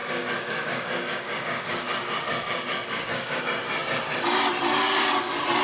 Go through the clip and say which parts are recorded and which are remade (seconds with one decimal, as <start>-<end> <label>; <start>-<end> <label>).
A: 0.0-3.4 remade; 3.4-5.6 recorded